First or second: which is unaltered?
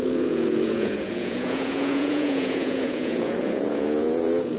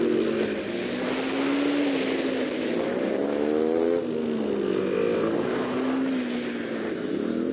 second